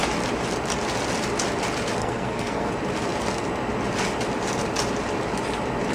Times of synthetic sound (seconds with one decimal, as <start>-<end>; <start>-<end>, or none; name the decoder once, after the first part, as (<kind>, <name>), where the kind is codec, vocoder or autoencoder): 2.0-2.7 (codec, SNAC)